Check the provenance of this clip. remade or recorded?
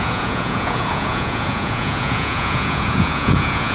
remade